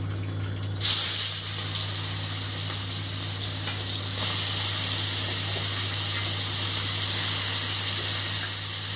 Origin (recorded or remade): recorded